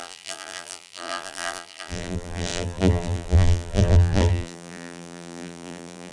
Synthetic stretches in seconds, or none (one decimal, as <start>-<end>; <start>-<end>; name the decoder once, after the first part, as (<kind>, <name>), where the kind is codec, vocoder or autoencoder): 0.0-6.1 (vocoder, BigVGAN v2)